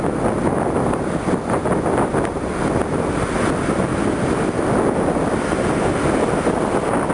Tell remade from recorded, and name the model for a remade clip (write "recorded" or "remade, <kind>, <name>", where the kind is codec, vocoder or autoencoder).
recorded